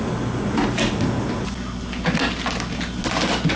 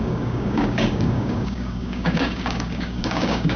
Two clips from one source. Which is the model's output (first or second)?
second